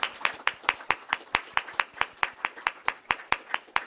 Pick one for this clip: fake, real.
fake